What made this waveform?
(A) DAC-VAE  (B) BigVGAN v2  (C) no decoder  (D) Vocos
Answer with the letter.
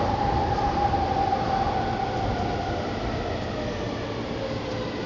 C